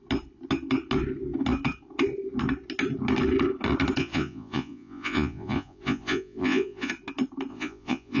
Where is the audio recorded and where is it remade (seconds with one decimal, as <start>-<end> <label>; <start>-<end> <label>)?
0.0-4.0 recorded; 4.0-6.9 remade; 6.9-7.5 recorded; 7.5-8.2 remade